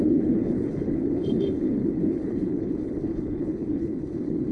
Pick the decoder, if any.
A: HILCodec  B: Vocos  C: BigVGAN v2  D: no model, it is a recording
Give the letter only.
A